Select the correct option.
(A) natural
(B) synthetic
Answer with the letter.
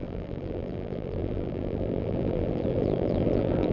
B